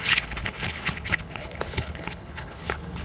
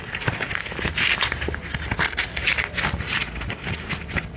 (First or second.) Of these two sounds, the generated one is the first